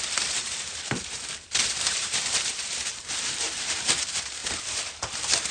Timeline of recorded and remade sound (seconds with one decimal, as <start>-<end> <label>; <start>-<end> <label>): 0.0-2.5 remade; 2.5-3.0 recorded; 3.0-4.4 remade; 4.4-5.5 recorded